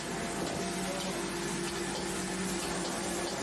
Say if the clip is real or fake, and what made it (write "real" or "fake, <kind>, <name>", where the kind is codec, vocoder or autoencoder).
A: real